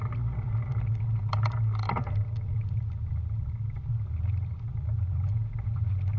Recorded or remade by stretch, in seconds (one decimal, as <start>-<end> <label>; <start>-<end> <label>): 0.0-6.2 recorded